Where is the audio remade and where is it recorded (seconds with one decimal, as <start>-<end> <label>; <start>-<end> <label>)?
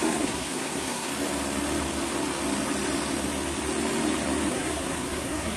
0.0-1.1 remade; 1.1-4.5 recorded; 4.5-5.6 remade